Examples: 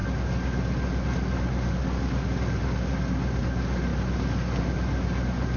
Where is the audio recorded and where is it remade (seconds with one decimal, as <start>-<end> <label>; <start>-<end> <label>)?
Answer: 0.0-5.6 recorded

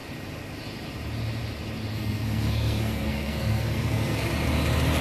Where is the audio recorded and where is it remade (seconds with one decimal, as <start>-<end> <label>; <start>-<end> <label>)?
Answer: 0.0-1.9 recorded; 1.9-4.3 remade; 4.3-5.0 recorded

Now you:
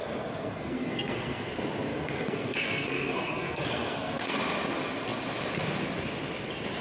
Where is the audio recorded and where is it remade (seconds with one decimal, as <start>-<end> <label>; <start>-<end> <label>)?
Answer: 0.0-1.4 remade; 1.4-1.9 recorded; 1.9-4.4 remade; 4.4-6.8 recorded

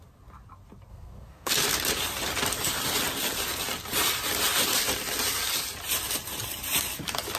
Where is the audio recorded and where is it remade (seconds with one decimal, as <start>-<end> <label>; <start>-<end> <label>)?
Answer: 0.0-0.9 recorded; 0.9-1.5 remade; 1.5-7.4 recorded

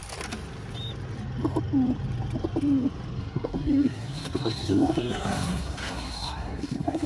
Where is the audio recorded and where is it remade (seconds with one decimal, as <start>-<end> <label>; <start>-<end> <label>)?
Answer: 0.0-3.2 recorded; 3.2-7.1 remade